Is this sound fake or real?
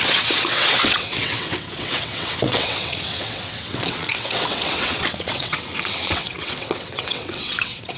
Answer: fake